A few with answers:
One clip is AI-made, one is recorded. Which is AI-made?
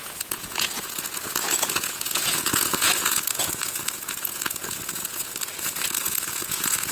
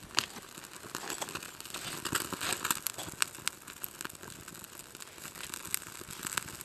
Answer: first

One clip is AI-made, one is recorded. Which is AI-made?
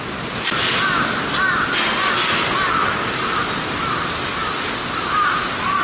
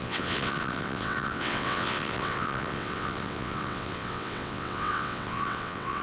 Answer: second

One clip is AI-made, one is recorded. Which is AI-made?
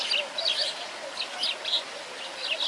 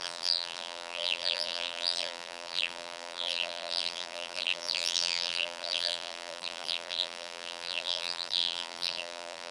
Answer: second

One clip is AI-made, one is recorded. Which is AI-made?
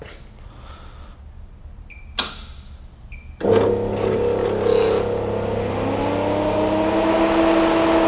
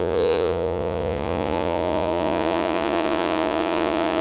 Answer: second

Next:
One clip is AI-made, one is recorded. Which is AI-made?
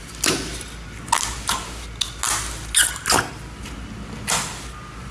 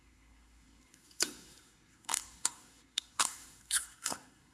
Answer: second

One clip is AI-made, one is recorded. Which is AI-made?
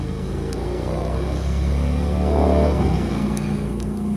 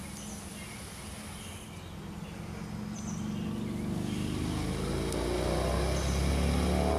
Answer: first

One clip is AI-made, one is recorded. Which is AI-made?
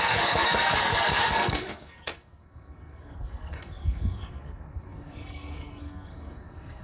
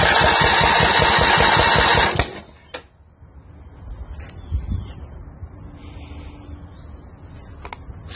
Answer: first